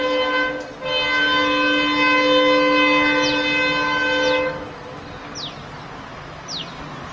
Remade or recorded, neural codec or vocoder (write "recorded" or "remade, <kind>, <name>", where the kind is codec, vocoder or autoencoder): recorded